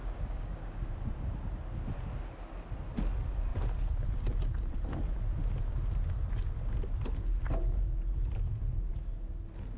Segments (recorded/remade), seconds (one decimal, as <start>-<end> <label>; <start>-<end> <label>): 0.0-0.9 remade; 0.9-9.8 recorded